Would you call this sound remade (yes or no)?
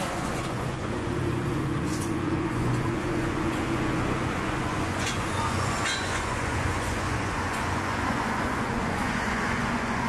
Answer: yes